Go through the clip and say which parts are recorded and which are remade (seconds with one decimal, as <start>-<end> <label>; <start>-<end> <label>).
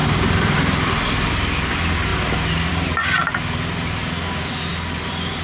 0.0-1.3 remade; 1.3-5.4 recorded